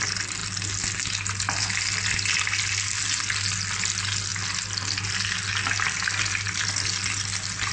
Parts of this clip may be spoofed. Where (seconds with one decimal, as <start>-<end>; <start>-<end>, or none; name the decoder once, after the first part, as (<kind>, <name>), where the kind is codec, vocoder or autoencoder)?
none